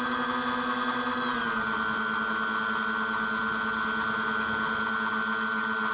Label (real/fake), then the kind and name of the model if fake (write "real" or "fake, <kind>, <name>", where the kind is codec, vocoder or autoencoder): real